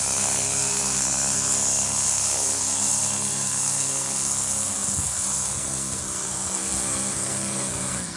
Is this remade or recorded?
remade